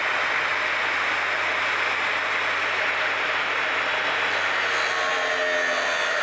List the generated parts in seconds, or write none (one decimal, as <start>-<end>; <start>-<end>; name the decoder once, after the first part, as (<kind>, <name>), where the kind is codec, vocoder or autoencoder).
none